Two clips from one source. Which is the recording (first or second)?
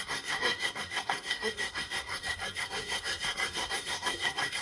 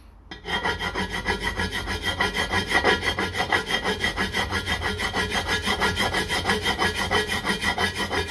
second